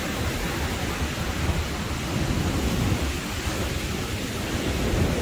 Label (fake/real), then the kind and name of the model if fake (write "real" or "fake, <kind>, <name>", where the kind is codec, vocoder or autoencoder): real